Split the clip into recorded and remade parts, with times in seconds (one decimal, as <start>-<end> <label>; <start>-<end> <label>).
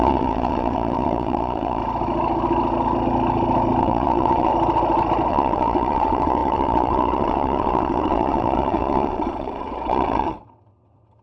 0.0-1.8 remade; 1.8-3.8 recorded; 3.8-4.5 remade; 4.5-5.3 recorded; 5.3-11.2 remade